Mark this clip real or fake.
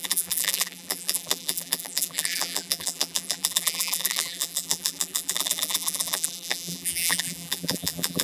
fake